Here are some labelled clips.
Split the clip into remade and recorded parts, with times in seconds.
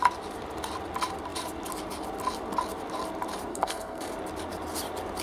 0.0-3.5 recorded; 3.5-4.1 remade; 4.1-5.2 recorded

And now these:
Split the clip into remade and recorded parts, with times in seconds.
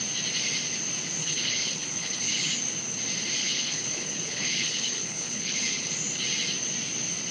0.0-1.2 recorded; 1.2-2.5 remade; 2.5-3.4 recorded; 3.4-5.9 remade; 5.9-7.3 recorded